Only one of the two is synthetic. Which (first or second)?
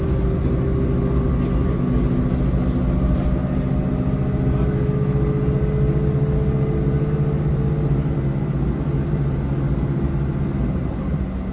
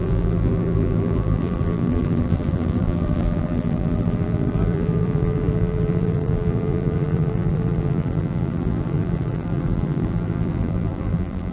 second